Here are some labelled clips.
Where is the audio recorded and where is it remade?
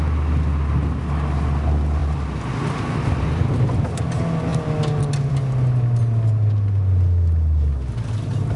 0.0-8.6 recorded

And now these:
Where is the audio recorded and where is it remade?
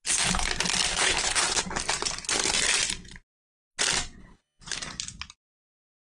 0.0-0.9 recorded; 0.9-1.6 remade; 1.6-4.2 recorded; 4.2-4.8 remade; 4.8-6.1 recorded